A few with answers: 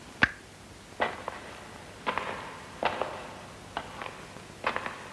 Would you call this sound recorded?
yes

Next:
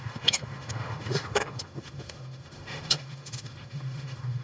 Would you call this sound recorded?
no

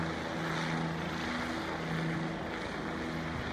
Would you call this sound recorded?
yes